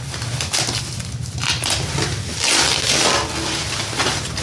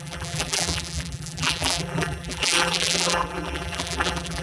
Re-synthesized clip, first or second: second